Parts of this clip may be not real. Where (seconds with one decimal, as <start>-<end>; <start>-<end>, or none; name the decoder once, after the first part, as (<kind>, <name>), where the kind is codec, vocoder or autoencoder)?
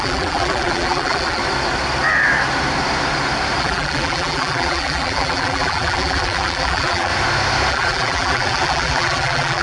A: 0.0-1.4 (vocoder, BigVGAN v2); 3.6-7.1; 7.7-9.6